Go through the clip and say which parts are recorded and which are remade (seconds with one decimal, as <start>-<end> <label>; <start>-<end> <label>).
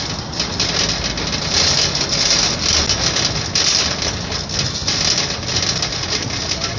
0.0-6.8 recorded